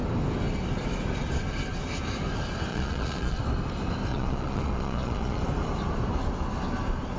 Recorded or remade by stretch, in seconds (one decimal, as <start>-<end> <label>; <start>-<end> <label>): 0.0-2.7 recorded; 2.7-3.4 remade; 3.4-4.1 recorded; 4.1-5.4 remade; 5.4-7.2 recorded